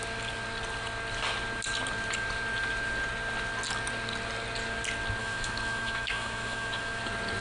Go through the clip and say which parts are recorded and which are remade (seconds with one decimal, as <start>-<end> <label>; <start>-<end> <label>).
0.0-5.2 recorded; 5.2-7.0 remade; 7.0-7.4 recorded